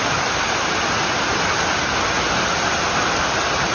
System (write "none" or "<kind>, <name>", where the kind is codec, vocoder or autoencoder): none